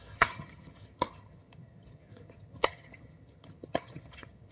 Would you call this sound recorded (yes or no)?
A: no